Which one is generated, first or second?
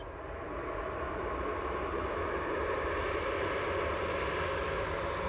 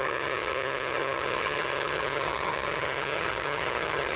second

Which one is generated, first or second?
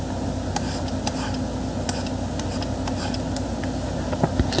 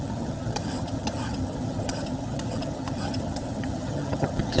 second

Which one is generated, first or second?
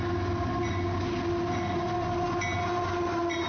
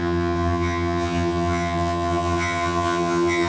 second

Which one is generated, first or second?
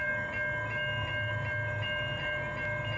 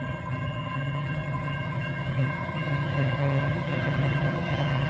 second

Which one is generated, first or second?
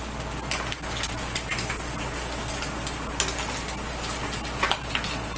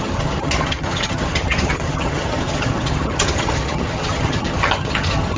second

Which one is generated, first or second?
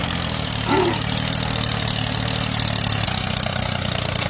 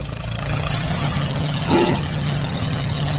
second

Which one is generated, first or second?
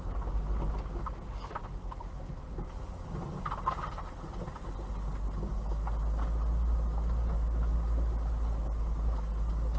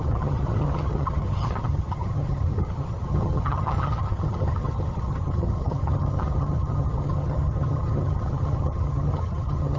second